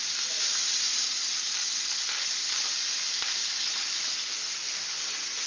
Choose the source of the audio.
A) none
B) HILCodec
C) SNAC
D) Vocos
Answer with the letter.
A